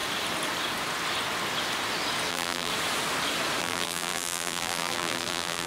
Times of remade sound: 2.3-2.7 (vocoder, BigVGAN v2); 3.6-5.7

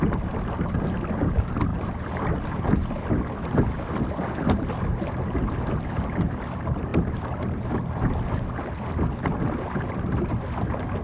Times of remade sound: 1.7-2.6 (vocoder, BigVGAN v2)

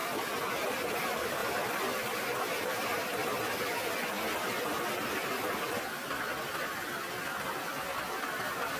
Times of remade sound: 0.9-1.4 (vocoder, BigVGAN v2); 2.6-3.2; 8.3-8.8

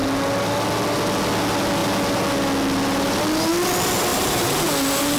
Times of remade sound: 4.1-4.7 (vocoder, BigVGAN v2)

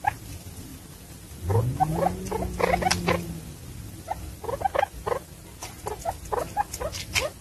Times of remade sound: none

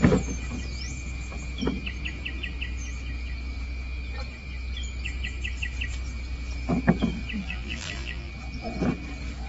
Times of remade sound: 7.4-8.3 (vocoder, BigVGAN v2)

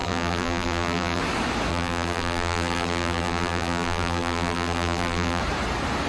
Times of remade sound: 0.0-1.2 (vocoder, BigVGAN v2); 1.7-5.4

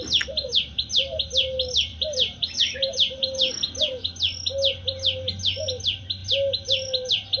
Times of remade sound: 1.9-3.5 (vocoder, BigVGAN v2)